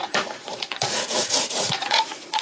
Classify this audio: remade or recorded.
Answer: remade